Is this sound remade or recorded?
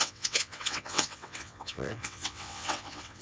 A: remade